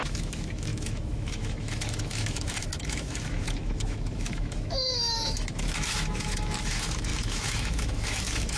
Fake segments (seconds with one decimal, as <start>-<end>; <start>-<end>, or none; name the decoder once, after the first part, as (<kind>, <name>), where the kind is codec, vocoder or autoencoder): 0.0-8.6 (autoencoder, DAC-VAE)